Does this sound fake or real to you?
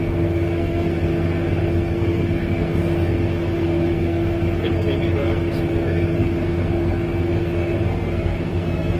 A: fake